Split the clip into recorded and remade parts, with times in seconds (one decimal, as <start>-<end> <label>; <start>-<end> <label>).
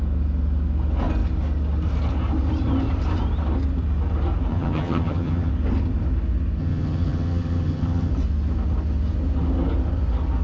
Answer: 0.0-4.5 recorded; 4.5-5.5 remade; 5.5-6.6 recorded; 6.6-8.1 remade; 8.1-10.4 recorded